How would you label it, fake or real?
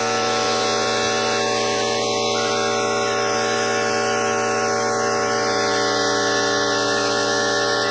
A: real